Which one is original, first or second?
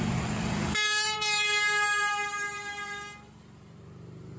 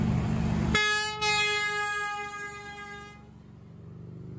second